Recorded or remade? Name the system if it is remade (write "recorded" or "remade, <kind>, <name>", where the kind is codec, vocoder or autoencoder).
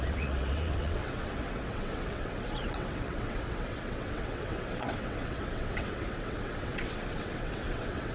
remade, vocoder, WaveNeXt